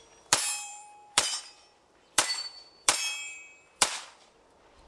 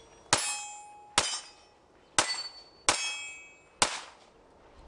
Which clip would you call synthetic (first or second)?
first